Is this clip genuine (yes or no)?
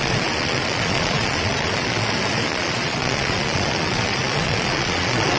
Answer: no